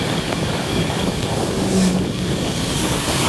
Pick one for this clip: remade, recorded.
remade